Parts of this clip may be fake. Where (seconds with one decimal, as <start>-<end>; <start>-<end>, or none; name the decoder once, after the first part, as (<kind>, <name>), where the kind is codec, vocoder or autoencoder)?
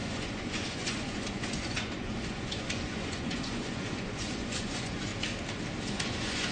0.0-5.1 (vocoder, Vocos); 5.9-6.5